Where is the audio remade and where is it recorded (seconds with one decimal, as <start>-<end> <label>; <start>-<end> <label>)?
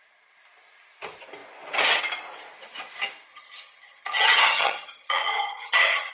0.0-3.3 recorded; 3.3-6.1 remade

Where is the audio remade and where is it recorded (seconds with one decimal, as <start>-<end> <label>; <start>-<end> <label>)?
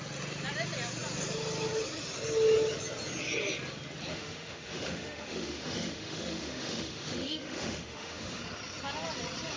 0.0-4.1 recorded; 4.1-8.4 remade; 8.4-9.6 recorded